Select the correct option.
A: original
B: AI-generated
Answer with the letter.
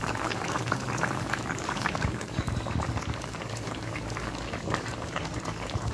B